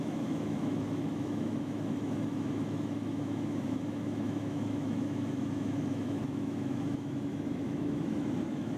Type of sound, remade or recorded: remade